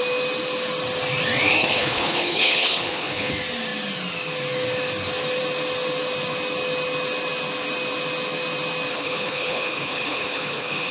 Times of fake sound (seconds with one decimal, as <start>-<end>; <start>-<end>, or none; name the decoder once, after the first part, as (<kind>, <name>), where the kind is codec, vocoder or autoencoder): 1.6-3.3 (codec, HILCodec); 8.9-10.9